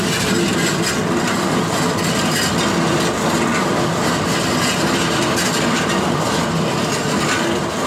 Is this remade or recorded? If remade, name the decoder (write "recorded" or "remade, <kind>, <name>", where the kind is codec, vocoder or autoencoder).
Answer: recorded